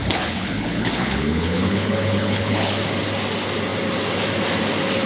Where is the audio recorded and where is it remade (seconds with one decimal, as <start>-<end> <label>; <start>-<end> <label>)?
0.0-2.7 remade; 2.7-5.1 recorded